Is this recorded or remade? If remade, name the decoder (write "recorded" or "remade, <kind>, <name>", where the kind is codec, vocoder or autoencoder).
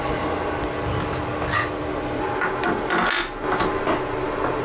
recorded